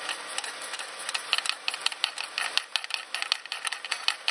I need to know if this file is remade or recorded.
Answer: recorded